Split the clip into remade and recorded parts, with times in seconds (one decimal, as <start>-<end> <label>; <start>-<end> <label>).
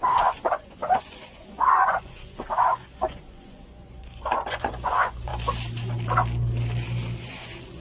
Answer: 0.0-5.3 remade; 5.3-7.2 recorded; 7.2-7.8 remade